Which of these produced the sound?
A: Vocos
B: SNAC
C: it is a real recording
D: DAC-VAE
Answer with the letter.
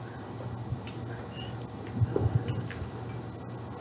C